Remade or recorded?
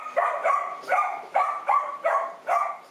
remade